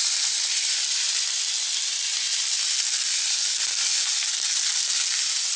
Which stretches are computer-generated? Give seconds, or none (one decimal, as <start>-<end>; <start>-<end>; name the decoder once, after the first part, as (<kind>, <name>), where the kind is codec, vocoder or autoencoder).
none